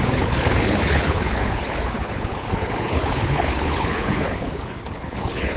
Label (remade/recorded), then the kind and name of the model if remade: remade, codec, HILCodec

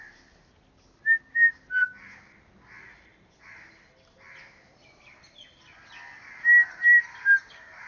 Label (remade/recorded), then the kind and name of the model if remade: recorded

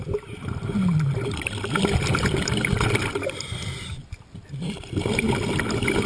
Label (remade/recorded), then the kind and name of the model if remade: recorded